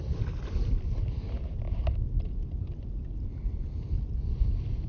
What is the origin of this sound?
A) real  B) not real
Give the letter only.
A